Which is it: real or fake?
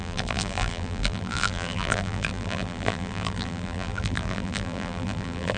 fake